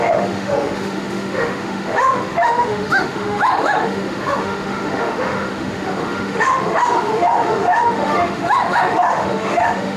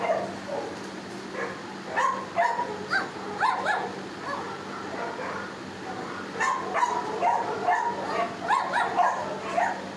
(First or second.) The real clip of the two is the second